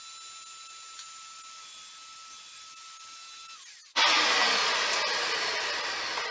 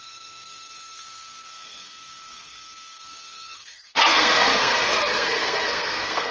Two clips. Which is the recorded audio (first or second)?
first